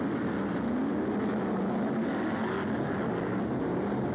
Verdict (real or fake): real